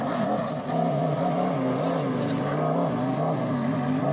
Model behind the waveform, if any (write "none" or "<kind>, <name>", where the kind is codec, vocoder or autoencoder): none